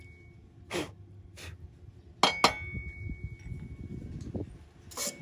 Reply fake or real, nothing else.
real